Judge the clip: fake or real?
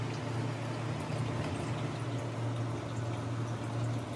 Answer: real